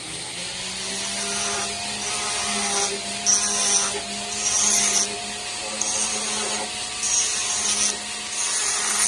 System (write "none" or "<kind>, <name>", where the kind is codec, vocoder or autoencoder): none